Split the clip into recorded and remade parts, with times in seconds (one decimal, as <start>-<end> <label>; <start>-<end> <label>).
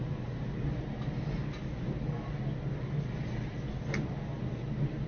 0.0-5.1 recorded